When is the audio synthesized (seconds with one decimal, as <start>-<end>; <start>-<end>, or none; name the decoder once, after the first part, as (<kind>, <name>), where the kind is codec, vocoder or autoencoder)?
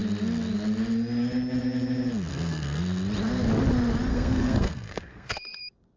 2.3-2.8 (codec, SNAC); 4.1-5.6